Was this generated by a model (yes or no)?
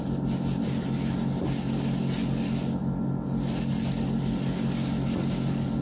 no